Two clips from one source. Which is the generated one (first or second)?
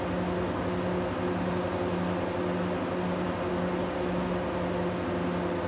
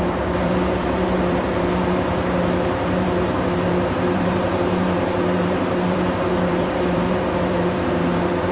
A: second